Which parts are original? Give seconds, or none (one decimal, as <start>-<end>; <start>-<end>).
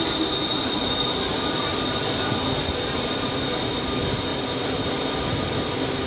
0.0-6.1